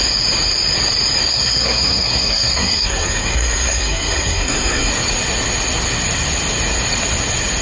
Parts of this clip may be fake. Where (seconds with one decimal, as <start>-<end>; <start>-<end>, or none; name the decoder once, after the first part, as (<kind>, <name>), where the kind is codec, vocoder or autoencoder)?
1.3-4.9 (codec, SNAC)